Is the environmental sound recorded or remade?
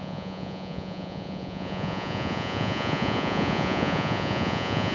remade